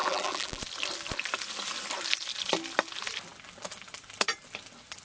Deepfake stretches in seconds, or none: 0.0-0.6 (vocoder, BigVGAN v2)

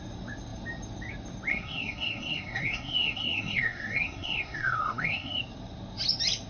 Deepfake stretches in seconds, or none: 1.5-5.4 (codec, SNAC)